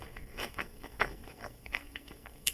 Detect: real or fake fake